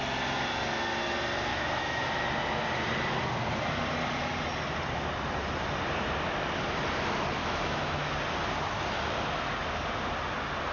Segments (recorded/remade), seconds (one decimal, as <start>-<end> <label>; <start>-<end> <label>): 0.0-1.5 recorded; 1.5-2.0 remade; 2.0-7.4 recorded; 7.4-8.1 remade; 8.1-10.7 recorded